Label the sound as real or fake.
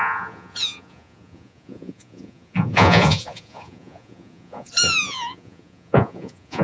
fake